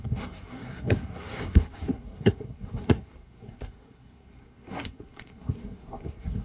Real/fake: fake